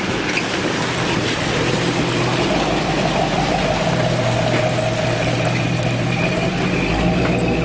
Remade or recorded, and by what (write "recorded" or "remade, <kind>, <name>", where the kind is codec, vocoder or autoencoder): recorded